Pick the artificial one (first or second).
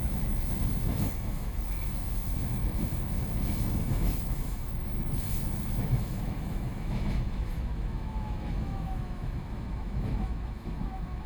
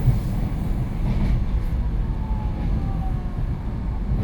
first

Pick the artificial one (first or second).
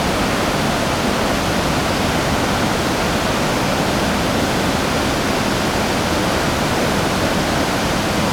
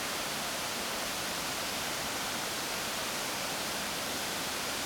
second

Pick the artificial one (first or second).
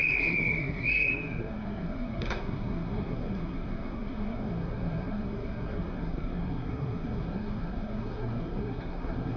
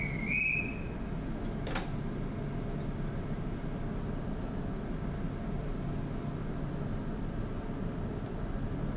first